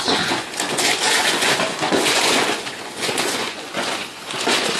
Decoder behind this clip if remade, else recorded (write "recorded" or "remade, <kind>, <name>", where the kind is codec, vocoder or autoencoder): remade, vocoder, Vocos